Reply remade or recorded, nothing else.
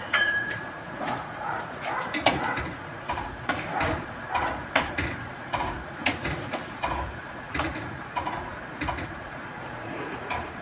remade